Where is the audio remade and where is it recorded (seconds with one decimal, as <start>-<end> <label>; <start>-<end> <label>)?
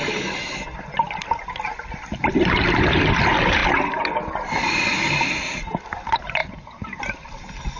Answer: 0.0-6.4 recorded; 6.4-7.0 remade; 7.0-7.8 recorded